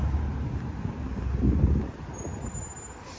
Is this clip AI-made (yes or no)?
no